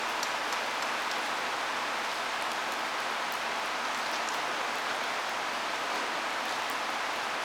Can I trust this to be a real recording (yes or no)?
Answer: yes